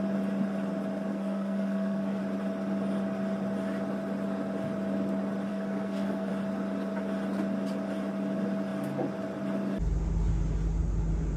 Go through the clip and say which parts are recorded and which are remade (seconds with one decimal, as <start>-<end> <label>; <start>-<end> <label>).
0.0-1.1 recorded; 1.1-2.2 remade; 2.2-5.5 recorded; 5.5-6.3 remade; 6.3-11.4 recorded

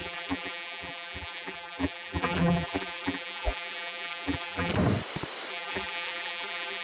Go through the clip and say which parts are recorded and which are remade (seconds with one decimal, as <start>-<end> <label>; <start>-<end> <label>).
0.0-4.7 remade; 4.7-5.5 recorded; 5.5-6.8 remade

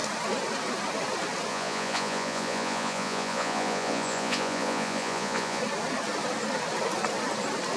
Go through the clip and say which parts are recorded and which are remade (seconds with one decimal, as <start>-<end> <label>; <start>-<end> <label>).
0.0-1.5 recorded; 1.5-5.6 remade; 5.6-7.8 recorded

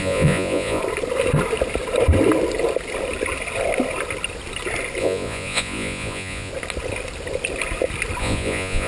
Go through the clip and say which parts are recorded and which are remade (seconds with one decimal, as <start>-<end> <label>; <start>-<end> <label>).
0.0-0.8 remade; 0.8-5.0 recorded; 5.0-6.5 remade; 6.5-8.2 recorded; 8.2-8.9 remade

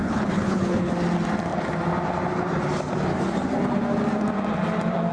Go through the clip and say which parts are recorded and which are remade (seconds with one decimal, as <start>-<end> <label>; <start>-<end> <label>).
0.0-0.9 remade; 0.9-5.1 recorded

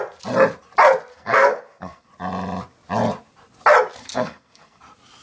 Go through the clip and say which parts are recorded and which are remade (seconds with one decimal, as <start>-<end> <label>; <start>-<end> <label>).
0.0-1.1 recorded; 1.1-2.1 remade; 2.1-4.0 recorded; 4.0-4.8 remade; 4.8-5.2 recorded

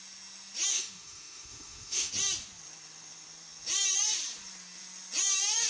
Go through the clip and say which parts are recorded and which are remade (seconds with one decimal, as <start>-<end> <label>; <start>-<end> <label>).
0.0-0.7 recorded; 0.7-2.1 remade; 2.1-5.7 recorded

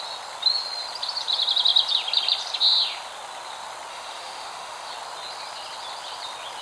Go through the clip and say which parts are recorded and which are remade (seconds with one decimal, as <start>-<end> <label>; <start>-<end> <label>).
0.0-3.9 recorded; 3.9-4.9 remade; 4.9-6.6 recorded